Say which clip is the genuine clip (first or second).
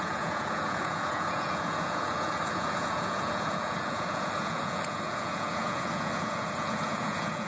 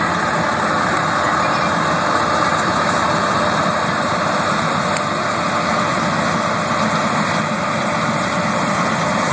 second